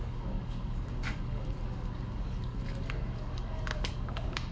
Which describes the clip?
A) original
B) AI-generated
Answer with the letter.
B